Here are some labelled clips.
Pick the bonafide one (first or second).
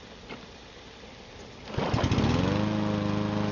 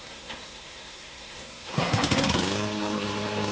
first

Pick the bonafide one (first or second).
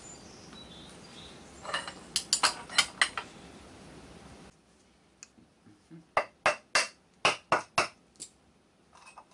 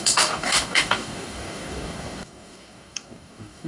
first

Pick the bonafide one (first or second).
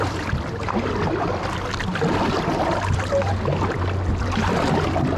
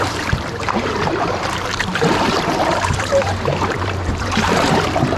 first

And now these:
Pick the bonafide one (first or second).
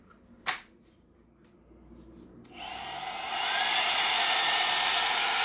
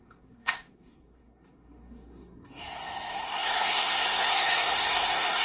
first